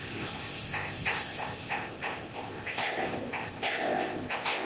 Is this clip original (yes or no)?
no